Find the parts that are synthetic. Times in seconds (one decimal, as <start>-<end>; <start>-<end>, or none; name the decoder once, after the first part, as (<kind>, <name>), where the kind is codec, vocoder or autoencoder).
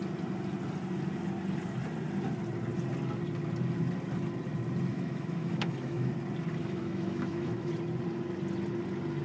4.9-6.1 (autoencoder, DAC-VAE); 6.6-7.7